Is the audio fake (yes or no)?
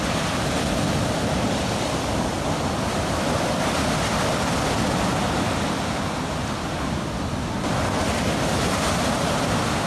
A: no